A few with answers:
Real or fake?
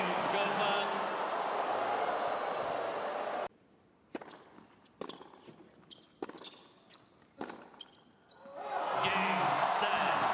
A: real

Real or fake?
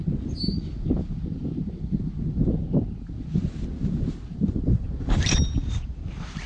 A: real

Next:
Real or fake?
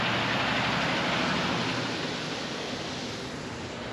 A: real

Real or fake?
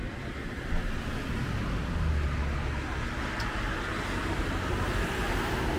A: real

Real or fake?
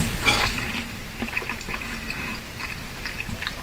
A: real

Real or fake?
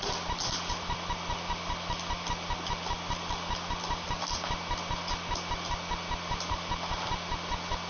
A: real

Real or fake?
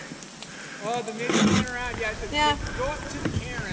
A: real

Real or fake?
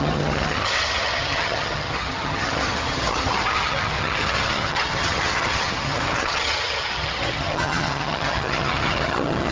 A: fake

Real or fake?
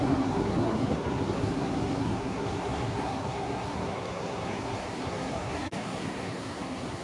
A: fake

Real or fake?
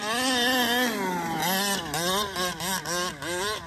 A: real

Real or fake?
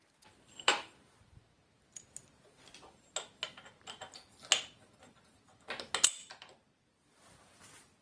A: real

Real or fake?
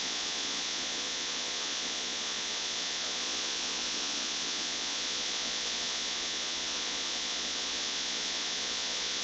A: fake